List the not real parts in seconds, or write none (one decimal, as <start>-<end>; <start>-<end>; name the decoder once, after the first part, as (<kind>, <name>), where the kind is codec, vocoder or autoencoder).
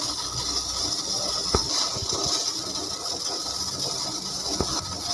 none